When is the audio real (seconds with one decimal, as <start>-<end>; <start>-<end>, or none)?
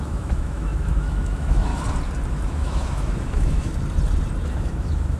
1.7-2.3; 3.7-4.5